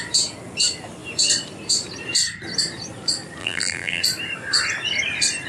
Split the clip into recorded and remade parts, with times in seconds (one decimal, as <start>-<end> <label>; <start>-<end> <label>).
0.0-3.4 recorded; 3.4-4.0 remade; 4.0-5.5 recorded